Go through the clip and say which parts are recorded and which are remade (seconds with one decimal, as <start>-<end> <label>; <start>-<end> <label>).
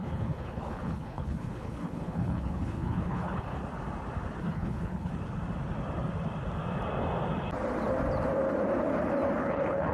0.0-3.6 remade; 3.6-4.4 recorded; 4.4-5.1 remade; 5.1-9.4 recorded; 9.4-9.9 remade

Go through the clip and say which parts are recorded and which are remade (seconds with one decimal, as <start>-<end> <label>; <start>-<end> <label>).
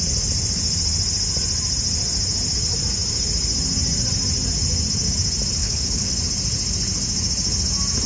0.0-5.6 recorded; 5.6-6.1 remade; 6.1-8.1 recorded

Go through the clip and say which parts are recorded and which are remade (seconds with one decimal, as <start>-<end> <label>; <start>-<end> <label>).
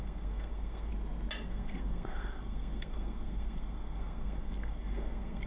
0.0-0.9 remade; 0.9-1.5 recorded; 1.5-5.5 remade